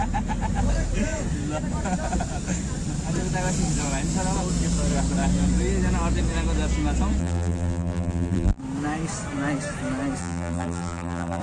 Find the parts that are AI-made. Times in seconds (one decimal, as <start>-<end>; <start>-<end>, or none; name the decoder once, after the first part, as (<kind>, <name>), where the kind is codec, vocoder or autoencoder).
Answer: 7.2-8.6 (vocoder, BigVGAN v2); 10.2-11.4